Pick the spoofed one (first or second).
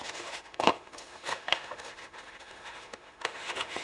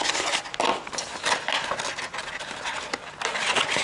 first